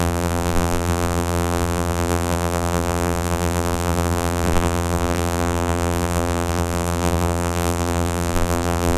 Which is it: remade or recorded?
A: remade